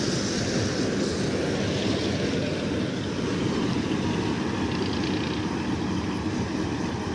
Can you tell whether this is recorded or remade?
recorded